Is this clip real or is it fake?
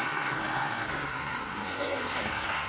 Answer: fake